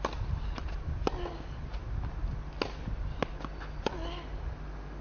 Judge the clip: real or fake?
real